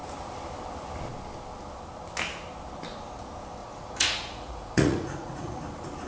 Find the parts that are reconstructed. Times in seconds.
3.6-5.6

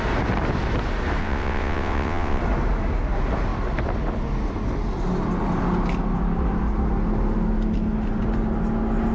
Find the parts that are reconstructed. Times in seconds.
1.2-2.4

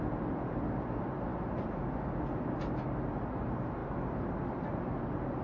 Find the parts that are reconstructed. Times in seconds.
none